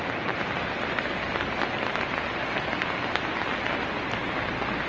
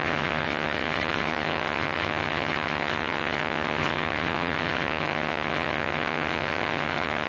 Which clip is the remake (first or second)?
second